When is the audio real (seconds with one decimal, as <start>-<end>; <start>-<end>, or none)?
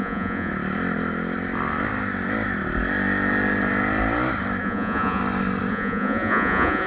0.5-4.6; 5.2-5.7